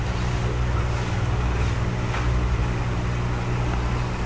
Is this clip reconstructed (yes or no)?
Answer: no